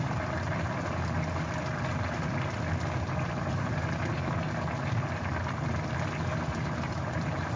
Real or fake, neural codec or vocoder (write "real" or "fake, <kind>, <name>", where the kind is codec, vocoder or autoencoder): real